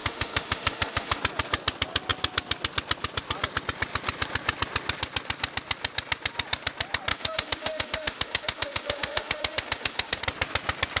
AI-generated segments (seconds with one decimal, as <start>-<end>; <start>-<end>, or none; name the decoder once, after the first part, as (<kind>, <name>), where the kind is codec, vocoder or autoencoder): 0.0-1.2 (autoencoder, DAC-VAE); 7.1-10.2